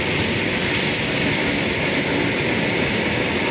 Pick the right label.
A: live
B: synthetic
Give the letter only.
A